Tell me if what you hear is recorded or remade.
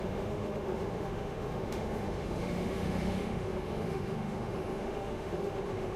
remade